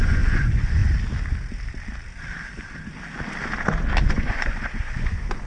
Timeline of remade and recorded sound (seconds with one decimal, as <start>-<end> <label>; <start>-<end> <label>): 0.0-0.8 remade; 0.8-4.1 recorded; 4.1-5.5 remade